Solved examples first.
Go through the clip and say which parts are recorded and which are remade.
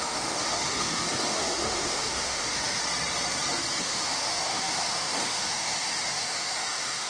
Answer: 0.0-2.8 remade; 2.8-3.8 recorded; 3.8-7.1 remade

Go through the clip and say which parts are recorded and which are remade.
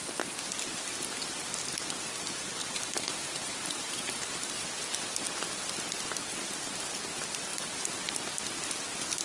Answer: 0.0-2.6 recorded; 2.6-4.5 remade; 4.5-9.2 recorded